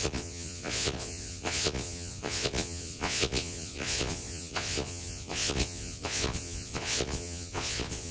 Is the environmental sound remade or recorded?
remade